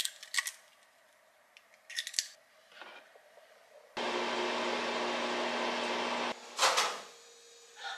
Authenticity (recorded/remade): recorded